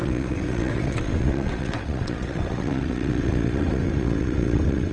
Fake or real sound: fake